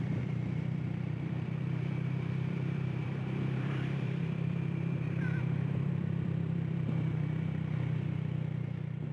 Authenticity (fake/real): fake